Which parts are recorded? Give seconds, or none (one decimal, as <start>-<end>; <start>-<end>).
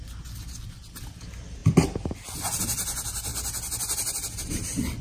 0.0-5.0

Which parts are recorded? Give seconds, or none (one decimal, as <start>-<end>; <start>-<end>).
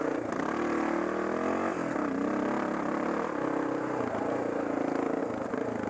0.0-5.9